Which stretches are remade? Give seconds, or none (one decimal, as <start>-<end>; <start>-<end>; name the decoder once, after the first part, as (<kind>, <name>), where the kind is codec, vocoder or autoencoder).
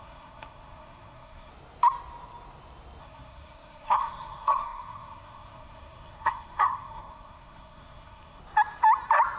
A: 0.0-1.5 (codec, SNAC); 3.0-8.4